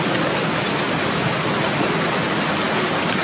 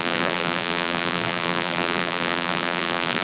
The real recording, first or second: first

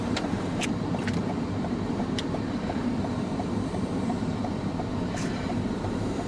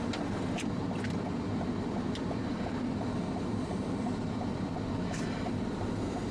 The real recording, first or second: second